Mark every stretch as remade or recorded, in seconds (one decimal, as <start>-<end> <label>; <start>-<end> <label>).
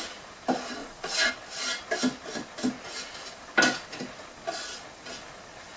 0.0-0.8 recorded; 0.8-1.3 remade; 1.3-5.8 recorded